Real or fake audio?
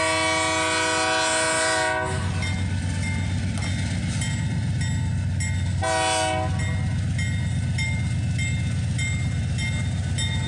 real